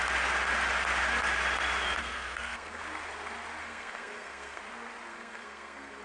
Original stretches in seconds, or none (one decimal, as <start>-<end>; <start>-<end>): 0.0-2.0; 2.8-3.6; 4.6-5.1